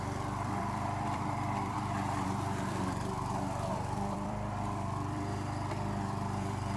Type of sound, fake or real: fake